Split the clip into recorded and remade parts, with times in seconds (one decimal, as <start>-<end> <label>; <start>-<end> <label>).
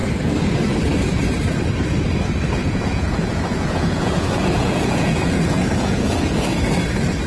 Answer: 0.0-2.6 recorded; 2.6-6.6 remade; 6.6-7.3 recorded